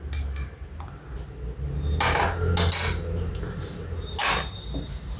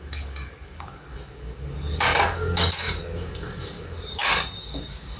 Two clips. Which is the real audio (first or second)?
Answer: first